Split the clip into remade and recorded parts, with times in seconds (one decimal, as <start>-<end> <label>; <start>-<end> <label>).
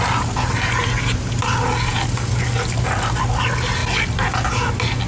0.0-5.1 recorded